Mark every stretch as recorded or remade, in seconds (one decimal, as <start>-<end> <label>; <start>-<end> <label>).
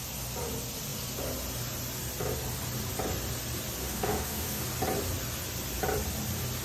0.0-3.8 recorded; 3.8-4.6 remade; 4.6-6.6 recorded